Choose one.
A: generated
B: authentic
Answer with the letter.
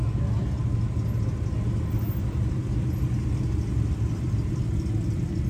B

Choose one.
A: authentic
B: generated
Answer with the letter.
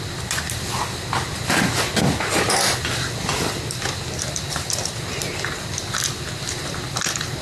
A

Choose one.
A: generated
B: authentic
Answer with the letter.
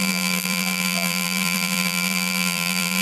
A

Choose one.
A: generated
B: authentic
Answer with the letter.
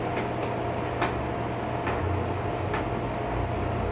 B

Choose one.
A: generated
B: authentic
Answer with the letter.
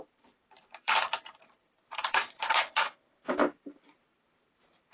A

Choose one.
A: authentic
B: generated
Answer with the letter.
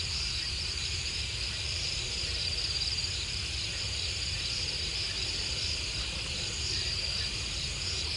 B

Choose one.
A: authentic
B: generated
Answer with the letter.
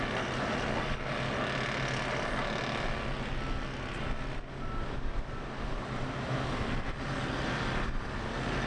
A